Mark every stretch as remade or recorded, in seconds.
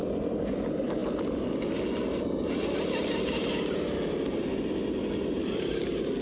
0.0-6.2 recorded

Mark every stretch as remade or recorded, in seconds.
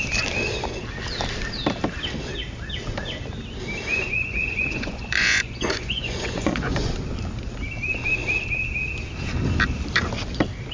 0.0-3.9 recorded; 3.9-6.9 remade; 6.9-10.7 recorded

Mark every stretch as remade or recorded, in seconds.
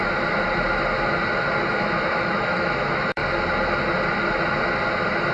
0.0-1.7 recorded; 1.7-3.2 remade; 3.2-5.3 recorded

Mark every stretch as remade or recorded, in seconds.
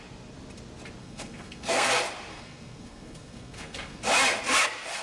0.0-1.0 recorded; 1.0-1.9 remade; 1.9-2.3 recorded; 2.3-4.0 remade; 4.0-5.0 recorded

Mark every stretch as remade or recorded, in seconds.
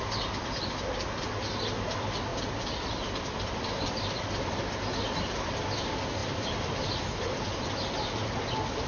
0.0-8.9 recorded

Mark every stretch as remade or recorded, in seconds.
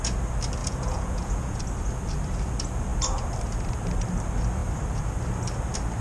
0.0-0.6 recorded; 0.6-1.6 remade; 1.6-6.0 recorded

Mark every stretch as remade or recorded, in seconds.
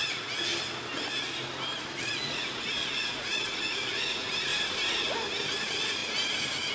0.0-0.5 remade; 0.5-2.0 recorded; 2.0-4.5 remade; 4.5-5.6 recorded; 5.6-6.0 remade; 6.0-6.7 recorded